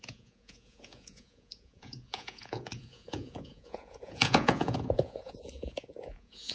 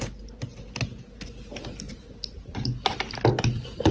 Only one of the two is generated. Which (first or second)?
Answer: first